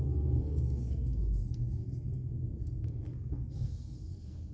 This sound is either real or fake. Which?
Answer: fake